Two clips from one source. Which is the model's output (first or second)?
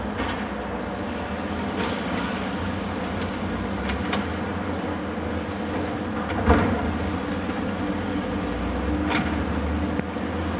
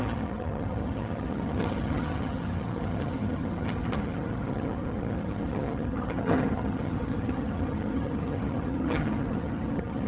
second